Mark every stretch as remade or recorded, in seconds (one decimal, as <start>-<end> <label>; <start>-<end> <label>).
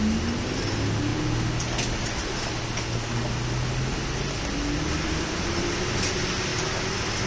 0.0-7.3 recorded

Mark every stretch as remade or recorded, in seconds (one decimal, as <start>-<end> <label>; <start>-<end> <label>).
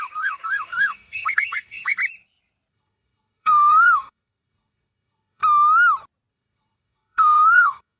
0.0-2.0 remade; 2.0-2.7 recorded; 2.7-5.4 remade; 5.4-6.3 recorded; 6.3-8.0 remade